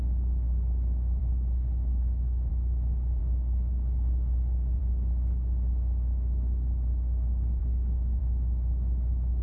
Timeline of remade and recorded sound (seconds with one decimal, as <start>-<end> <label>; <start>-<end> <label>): 0.0-1.2 recorded; 1.2-2.5 remade; 2.5-3.2 recorded; 3.2-4.8 remade; 4.8-7.6 recorded; 7.6-8.2 remade; 8.2-9.4 recorded